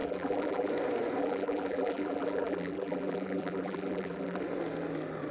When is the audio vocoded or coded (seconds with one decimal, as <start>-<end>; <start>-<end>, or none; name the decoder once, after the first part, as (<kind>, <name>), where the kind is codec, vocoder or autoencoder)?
0.0-0.7 (vocoder, BigVGAN v2); 1.2-4.4